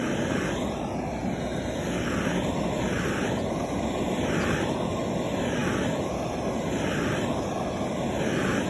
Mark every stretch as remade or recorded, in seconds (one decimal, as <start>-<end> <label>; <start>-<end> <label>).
0.0-8.7 recorded